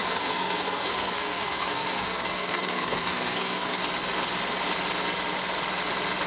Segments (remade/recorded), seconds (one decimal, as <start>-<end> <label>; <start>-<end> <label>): 0.0-3.8 remade; 3.8-6.3 recorded